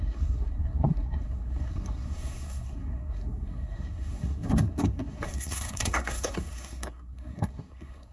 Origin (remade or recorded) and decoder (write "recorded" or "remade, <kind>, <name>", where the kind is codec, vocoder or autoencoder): remade, codec, SNAC